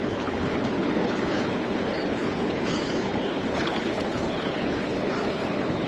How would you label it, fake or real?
fake